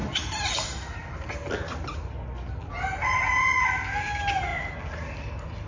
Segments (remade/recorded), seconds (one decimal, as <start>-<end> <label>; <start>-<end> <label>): 0.0-5.7 recorded